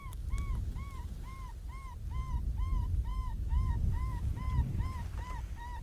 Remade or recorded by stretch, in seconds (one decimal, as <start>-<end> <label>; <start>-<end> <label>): 0.0-3.1 recorded; 3.1-4.3 remade; 4.3-5.8 recorded